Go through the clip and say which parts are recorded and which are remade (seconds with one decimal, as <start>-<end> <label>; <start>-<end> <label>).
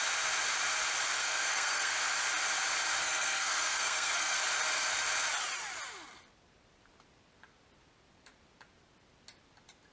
0.0-1.2 recorded; 1.2-2.0 remade; 2.0-3.0 recorded; 3.0-4.4 remade; 4.4-9.9 recorded